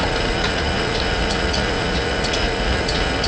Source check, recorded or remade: remade